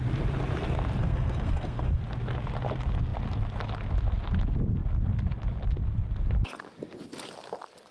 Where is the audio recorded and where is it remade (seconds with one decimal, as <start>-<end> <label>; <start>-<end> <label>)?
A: 0.0-1.0 recorded; 1.0-2.0 remade; 2.0-7.9 recorded